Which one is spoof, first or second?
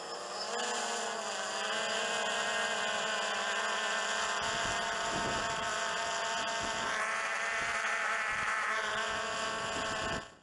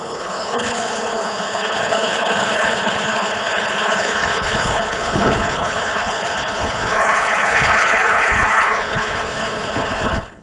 second